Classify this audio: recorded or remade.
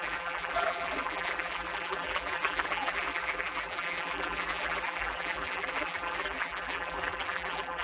remade